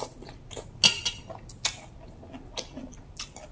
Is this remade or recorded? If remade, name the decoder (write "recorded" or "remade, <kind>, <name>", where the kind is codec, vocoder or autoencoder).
recorded